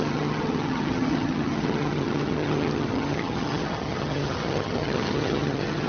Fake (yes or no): yes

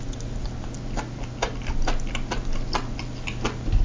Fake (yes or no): no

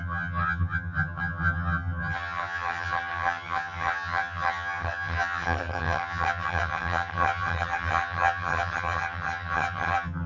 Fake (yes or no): yes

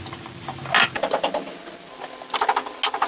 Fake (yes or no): no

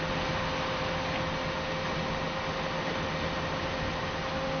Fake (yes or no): no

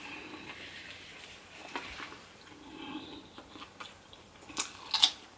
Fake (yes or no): no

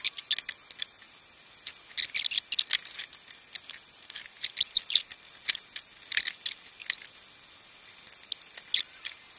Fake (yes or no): no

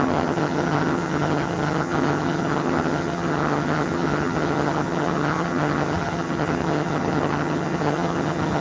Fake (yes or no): yes